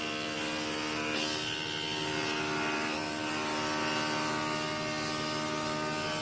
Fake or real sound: real